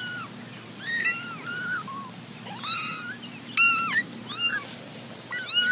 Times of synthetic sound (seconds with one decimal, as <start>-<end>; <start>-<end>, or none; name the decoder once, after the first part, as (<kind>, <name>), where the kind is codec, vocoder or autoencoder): none